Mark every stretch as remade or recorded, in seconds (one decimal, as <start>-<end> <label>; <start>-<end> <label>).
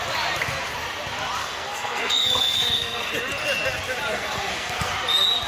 0.0-1.4 recorded; 1.4-3.1 remade; 3.1-4.1 recorded; 4.1-4.9 remade; 4.9-5.5 recorded